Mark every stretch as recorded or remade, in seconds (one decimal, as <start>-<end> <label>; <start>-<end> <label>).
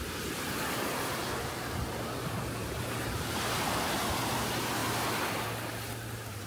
0.0-2.6 recorded; 2.6-4.0 remade; 4.0-6.5 recorded